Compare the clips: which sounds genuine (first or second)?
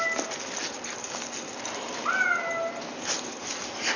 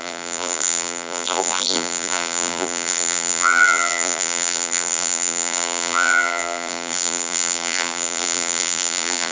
first